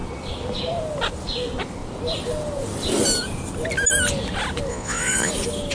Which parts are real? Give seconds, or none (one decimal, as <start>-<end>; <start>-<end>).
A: 0.0-4.7; 5.3-5.7